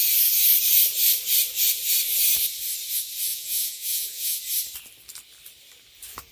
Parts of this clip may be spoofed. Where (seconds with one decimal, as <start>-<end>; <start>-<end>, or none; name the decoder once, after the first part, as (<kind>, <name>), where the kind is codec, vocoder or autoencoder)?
3.3-4.4 (vocoder, Vocos)